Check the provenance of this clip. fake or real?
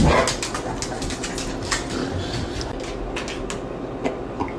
real